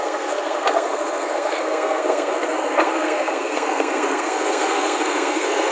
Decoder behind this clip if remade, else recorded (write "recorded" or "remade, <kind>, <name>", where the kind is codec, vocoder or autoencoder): remade, codec, SNAC